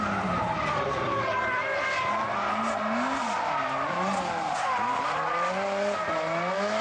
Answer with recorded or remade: recorded